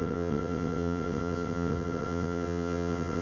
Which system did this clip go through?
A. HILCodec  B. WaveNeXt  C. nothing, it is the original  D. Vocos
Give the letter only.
B